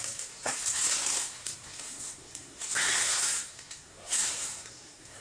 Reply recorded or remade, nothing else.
remade